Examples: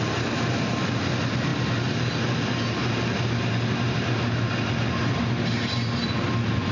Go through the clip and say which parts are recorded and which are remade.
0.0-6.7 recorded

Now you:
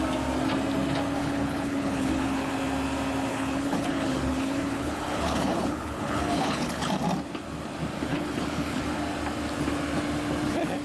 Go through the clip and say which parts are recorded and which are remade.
0.0-1.2 recorded; 1.2-2.5 remade; 2.5-3.3 recorded; 3.3-6.9 remade; 6.9-8.1 recorded; 8.1-8.8 remade; 8.8-10.8 recorded